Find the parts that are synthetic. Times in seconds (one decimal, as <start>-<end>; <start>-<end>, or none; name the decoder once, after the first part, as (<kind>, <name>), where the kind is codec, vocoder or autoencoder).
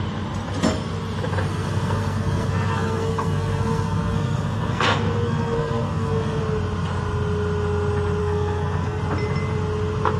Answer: 1.5-6.4 (codec, SNAC); 8.2-9.0